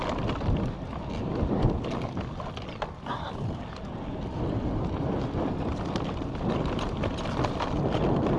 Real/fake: real